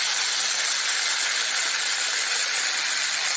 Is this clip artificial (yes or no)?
no